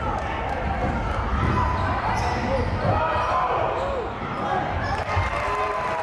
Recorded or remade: recorded